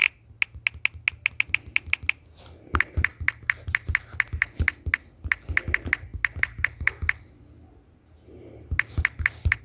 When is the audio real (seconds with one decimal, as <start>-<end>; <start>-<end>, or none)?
0.0-9.6